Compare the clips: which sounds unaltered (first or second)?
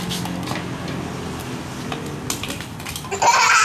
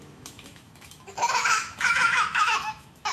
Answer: first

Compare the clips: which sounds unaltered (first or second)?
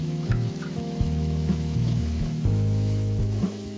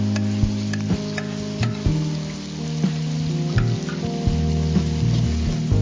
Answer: second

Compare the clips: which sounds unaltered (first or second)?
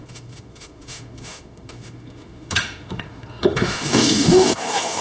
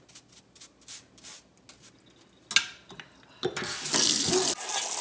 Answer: second